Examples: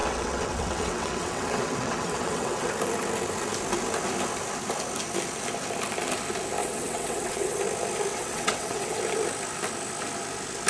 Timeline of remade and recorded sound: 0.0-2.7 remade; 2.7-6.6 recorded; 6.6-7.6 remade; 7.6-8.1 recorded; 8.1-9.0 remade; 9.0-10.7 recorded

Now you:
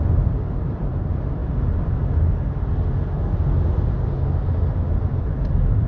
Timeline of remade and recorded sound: 0.0-5.9 recorded

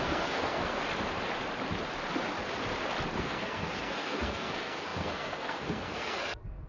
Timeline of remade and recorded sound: 0.0-0.8 remade; 0.8-3.2 recorded; 3.2-6.7 remade

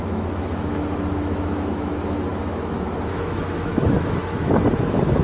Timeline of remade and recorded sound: 0.0-5.2 remade